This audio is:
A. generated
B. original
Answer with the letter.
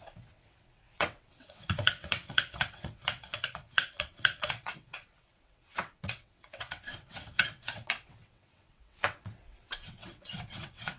A